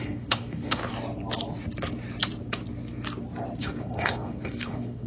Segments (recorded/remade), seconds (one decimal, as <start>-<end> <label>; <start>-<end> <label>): 0.0-0.8 remade; 0.8-3.6 recorded; 3.6-5.1 remade